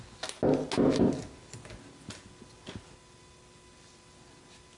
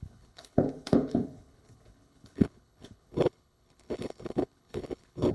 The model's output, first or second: second